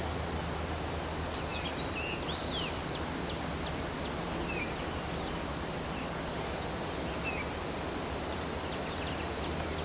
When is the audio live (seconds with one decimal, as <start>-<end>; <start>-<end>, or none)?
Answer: 0.0-9.8